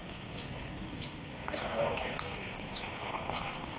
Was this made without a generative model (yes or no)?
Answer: no